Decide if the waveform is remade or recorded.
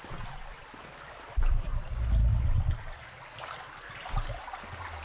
recorded